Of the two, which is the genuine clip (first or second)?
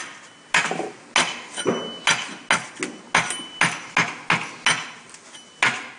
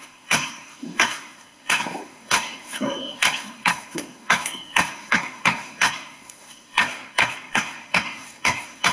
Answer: first